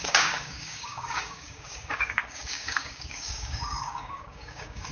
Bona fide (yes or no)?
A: no